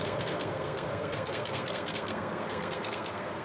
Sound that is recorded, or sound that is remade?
remade